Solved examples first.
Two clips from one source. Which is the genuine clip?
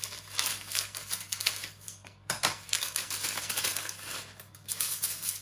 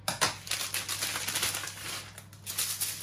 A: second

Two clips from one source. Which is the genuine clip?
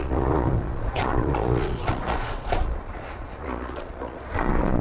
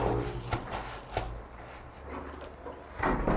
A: second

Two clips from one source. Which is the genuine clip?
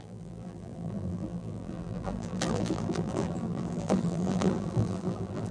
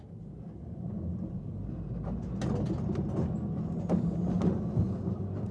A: second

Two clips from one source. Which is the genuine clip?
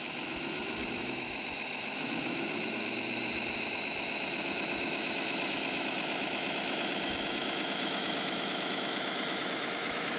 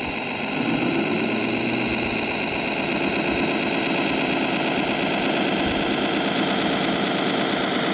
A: second